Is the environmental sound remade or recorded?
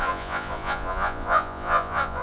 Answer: remade